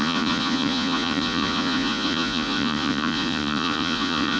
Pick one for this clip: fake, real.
fake